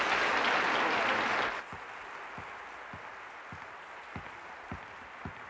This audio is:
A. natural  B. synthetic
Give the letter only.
A